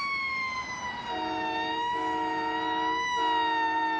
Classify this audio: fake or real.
real